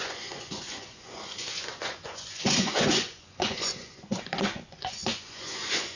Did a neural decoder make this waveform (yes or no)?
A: yes